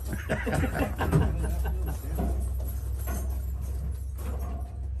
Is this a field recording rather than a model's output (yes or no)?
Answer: yes